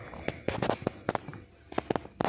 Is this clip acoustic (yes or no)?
yes